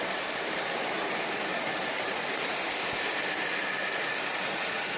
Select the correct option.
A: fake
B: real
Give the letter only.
A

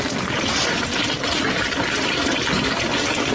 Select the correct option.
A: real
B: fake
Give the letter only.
B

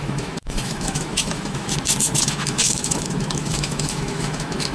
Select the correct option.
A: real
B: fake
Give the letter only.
B